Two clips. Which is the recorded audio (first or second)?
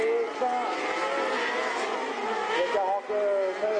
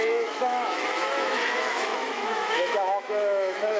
first